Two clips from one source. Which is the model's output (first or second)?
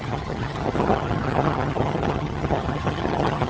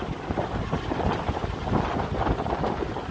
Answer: first